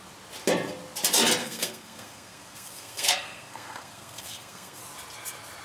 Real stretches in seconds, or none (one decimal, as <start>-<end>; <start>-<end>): 0.0-1.4; 4.8-5.6